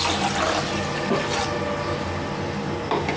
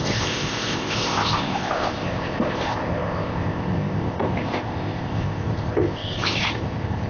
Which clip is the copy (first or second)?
second